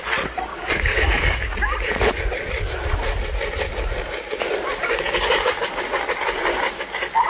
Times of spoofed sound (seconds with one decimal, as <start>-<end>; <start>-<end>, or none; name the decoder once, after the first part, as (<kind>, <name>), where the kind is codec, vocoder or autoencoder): 0.5-1.5 (codec, DAC)